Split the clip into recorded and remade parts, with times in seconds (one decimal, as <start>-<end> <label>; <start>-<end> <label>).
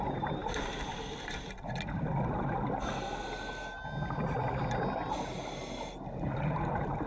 0.0-7.1 recorded